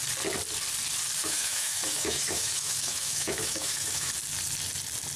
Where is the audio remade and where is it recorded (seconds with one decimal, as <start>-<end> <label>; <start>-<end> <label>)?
0.0-1.2 recorded; 1.2-4.1 remade; 4.1-5.2 recorded